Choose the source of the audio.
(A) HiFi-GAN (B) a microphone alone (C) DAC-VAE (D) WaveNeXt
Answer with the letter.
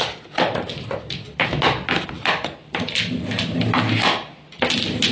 B